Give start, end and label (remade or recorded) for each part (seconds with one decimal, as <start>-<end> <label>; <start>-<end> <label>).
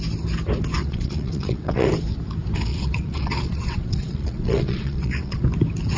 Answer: 0.0-0.8 recorded; 0.8-1.9 remade; 1.9-2.7 recorded; 2.7-5.4 remade; 5.4-6.0 recorded